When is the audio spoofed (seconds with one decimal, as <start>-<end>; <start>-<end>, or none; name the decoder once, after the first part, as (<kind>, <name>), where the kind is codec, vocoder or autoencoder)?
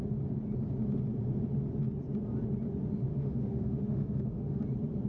3.1-4.6 (autoencoder, DAC-VAE)